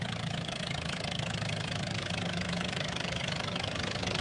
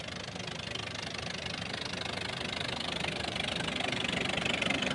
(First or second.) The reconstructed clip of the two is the first